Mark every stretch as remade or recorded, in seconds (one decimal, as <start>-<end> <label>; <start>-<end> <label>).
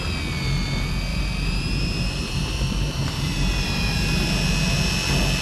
0.0-1.1 recorded; 1.1-4.3 remade; 4.3-5.4 recorded